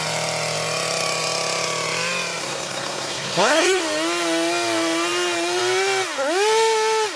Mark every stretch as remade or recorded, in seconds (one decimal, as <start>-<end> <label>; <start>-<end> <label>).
0.0-2.4 recorded; 2.4-3.8 remade; 3.8-7.2 recorded